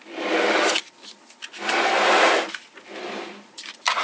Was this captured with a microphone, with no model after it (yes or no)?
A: yes